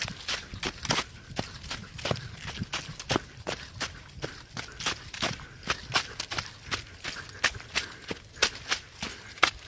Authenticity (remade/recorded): recorded